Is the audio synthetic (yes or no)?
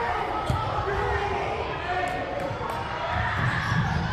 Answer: no